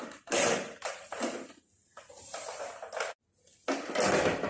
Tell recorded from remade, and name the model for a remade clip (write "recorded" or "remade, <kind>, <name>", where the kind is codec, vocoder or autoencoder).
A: recorded